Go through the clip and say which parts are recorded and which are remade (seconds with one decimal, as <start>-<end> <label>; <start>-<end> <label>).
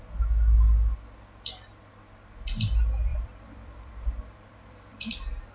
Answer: 0.0-3.1 recorded; 3.1-5.1 remade; 5.1-5.5 recorded